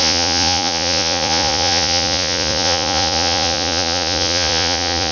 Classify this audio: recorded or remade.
remade